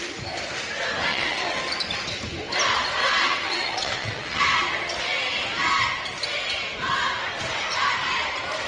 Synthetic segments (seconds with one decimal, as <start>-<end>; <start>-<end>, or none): 1.1-1.6; 3.0-4.4